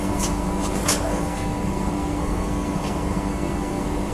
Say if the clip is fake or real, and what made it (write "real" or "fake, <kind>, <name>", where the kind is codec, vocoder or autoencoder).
fake, codec, SNAC